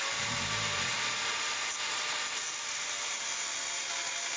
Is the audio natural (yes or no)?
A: yes